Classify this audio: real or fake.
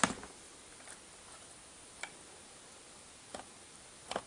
real